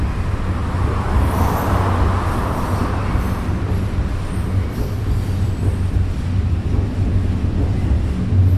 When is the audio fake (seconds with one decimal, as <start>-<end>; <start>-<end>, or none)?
none